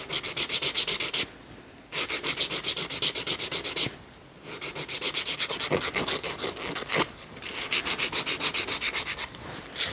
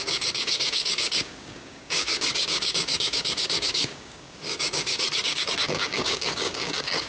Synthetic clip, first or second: second